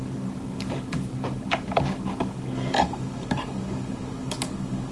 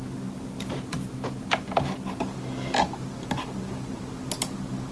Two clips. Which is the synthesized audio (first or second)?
first